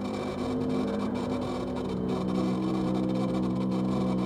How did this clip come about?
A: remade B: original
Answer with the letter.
A